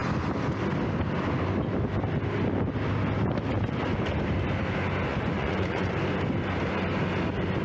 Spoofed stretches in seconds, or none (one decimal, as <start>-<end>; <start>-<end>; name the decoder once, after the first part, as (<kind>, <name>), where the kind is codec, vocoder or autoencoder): 5.1-5.9 (vocoder, Vocos)